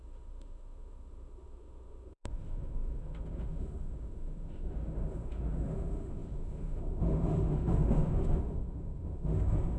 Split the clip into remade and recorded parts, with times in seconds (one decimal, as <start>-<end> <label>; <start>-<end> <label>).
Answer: 0.0-9.8 remade